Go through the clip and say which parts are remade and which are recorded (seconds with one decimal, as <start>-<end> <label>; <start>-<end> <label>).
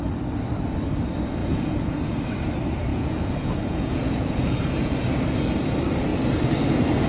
0.0-1.4 recorded; 1.4-2.2 remade; 2.2-2.9 recorded; 2.9-5.0 remade; 5.0-7.1 recorded